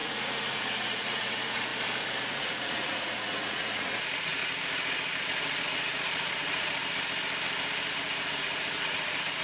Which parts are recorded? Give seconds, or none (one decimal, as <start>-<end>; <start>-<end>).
1.7-2.3; 4.4-5.4; 6.8-7.9